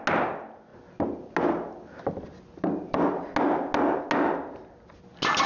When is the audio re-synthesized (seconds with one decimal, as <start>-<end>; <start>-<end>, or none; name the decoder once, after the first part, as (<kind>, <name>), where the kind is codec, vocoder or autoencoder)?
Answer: none